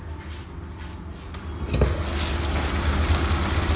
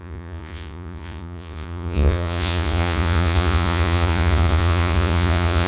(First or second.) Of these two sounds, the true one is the first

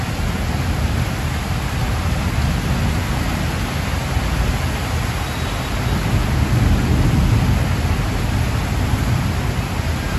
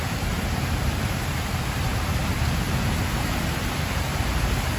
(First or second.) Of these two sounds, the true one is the first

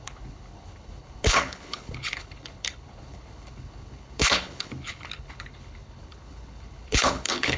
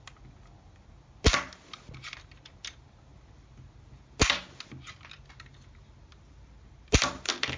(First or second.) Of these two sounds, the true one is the second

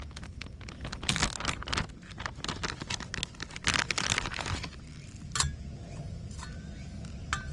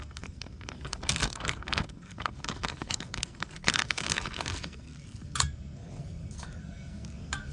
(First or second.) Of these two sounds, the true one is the first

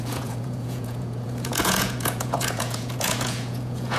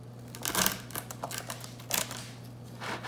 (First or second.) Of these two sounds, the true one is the second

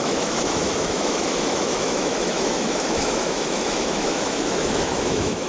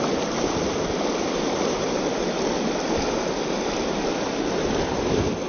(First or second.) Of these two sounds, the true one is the second